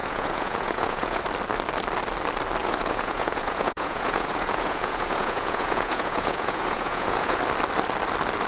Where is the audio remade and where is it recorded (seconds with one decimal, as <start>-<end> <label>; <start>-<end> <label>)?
0.0-1.2 remade; 1.2-2.6 recorded; 2.6-7.4 remade; 7.4-8.5 recorded